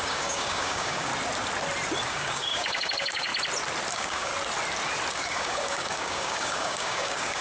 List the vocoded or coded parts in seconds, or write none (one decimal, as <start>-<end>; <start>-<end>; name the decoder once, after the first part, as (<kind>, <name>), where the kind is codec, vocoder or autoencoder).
0.0-1.1 (codec, DAC); 2.1-3.3; 3.9-4.3; 5.1-7.4